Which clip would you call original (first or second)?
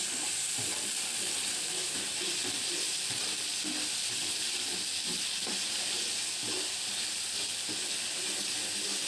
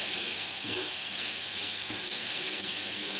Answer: first